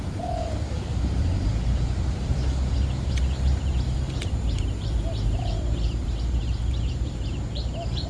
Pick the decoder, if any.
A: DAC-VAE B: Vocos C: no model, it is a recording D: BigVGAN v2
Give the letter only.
D